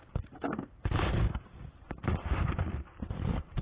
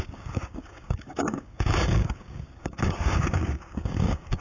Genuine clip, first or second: first